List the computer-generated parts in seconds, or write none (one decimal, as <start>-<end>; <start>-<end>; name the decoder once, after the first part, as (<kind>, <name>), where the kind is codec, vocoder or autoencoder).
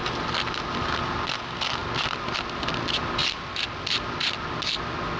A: none